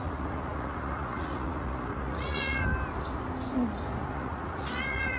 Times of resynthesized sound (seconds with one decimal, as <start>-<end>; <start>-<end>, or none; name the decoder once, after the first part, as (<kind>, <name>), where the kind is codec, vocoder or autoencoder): 0.0-2.7 (vocoder, Vocos); 4.1-5.2